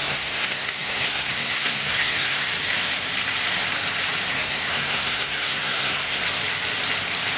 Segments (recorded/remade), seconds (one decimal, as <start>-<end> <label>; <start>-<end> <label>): 0.0-2.5 remade; 2.5-4.3 recorded; 4.3-6.2 remade; 6.2-7.4 recorded